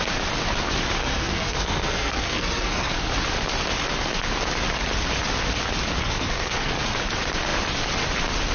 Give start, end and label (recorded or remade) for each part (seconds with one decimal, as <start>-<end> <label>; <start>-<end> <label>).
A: 0.0-1.0 recorded; 1.0-3.1 remade; 3.1-6.0 recorded; 6.0-6.7 remade; 6.7-8.5 recorded